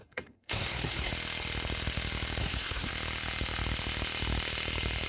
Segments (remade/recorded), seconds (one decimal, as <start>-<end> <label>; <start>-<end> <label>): 0.0-1.1 remade; 1.1-2.4 recorded; 2.4-2.9 remade; 2.9-5.1 recorded